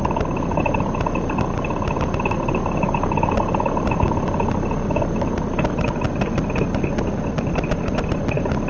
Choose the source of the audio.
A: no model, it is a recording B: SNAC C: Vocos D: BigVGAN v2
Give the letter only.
A